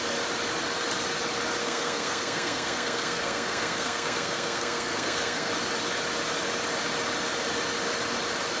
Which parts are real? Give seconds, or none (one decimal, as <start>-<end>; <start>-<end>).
0.0-1.6; 5.5-8.6